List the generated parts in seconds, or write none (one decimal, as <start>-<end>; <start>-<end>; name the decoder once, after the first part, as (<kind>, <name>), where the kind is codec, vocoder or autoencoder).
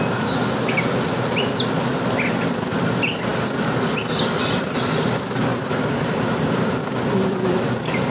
5.5-6.7 (vocoder, BigVGAN v2)